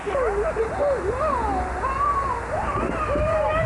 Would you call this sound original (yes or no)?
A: yes